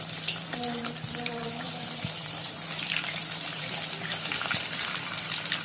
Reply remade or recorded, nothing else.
remade